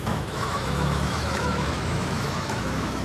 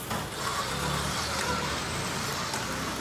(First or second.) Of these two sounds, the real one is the second